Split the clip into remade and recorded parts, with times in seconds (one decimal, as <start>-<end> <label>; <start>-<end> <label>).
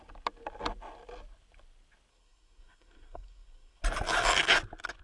0.0-2.1 recorded; 2.1-3.8 remade; 3.8-5.0 recorded